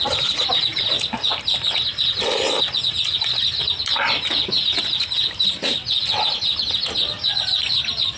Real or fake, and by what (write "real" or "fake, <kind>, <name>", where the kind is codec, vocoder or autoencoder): real